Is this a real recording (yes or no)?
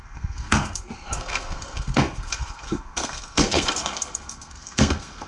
no